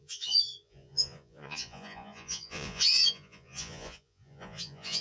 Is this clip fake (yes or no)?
yes